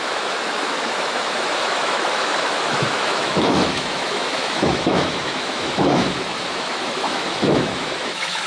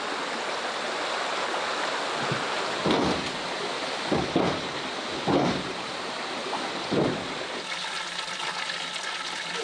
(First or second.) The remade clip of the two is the first